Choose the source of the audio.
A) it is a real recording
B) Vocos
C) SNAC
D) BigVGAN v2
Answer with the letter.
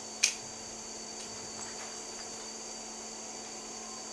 A